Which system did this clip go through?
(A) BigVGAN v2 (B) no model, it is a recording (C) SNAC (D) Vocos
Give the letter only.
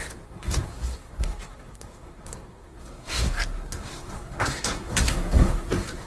C